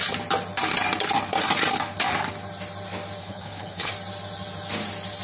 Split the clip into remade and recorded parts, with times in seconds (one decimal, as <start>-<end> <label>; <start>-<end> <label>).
0.0-3.2 recorded; 3.2-3.9 remade; 3.9-5.2 recorded